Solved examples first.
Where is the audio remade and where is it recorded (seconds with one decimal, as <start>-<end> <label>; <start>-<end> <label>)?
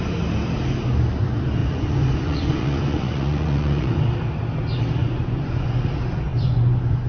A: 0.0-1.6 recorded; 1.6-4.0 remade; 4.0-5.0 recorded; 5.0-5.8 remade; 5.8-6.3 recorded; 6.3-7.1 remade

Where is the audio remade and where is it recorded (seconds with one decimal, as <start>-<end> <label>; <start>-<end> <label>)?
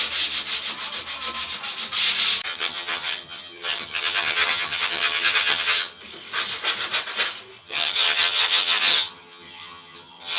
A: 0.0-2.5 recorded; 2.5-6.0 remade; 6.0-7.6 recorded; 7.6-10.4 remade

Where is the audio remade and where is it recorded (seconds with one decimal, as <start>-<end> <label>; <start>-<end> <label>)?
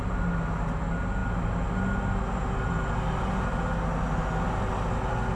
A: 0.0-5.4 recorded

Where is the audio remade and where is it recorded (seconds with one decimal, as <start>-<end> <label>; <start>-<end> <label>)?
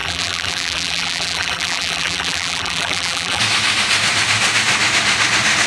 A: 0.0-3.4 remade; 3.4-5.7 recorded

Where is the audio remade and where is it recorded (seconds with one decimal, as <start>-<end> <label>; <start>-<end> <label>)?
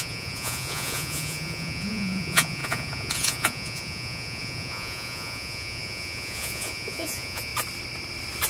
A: 0.0-7.5 remade; 7.5-8.5 recorded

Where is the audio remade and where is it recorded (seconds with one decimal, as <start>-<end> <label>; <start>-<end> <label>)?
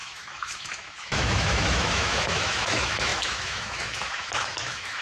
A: 0.0-5.0 remade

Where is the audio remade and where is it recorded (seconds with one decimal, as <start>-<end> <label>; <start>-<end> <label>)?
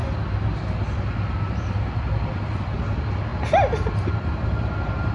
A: 0.0-5.1 recorded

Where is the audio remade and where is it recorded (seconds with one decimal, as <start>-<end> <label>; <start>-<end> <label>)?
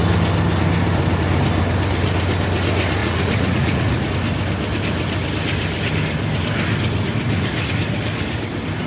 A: 0.0-3.0 recorded; 3.0-4.1 remade; 4.1-8.9 recorded